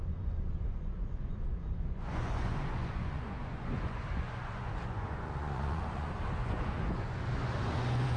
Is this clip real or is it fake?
fake